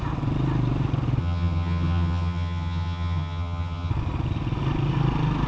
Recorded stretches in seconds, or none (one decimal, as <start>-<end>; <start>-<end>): 0.0-1.2; 3.9-5.5